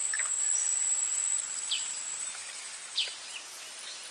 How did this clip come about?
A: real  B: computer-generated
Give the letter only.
A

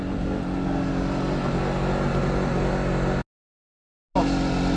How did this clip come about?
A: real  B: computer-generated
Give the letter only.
A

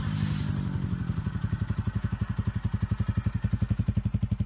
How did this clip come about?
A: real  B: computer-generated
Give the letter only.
A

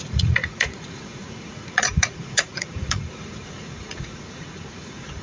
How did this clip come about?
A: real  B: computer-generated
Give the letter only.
B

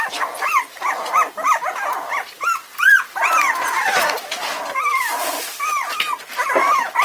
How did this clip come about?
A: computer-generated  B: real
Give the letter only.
B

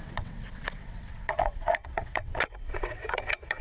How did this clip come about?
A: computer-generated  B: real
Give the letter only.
A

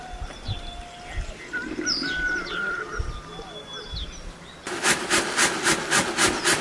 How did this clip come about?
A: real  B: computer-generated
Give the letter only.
A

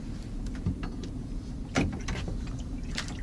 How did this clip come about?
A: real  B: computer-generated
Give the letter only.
B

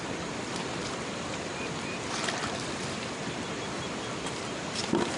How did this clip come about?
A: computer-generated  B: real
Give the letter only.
A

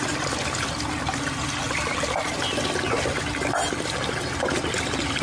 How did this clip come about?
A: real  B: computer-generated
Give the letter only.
A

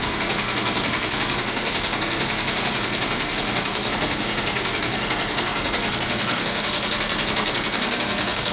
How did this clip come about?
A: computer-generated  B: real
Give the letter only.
A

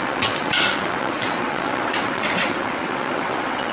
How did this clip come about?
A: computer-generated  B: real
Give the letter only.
A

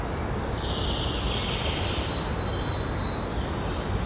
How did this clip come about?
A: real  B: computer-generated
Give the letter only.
A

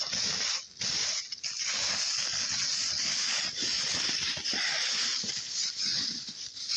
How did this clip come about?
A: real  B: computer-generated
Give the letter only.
A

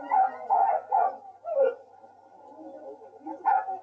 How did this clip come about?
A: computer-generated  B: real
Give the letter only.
B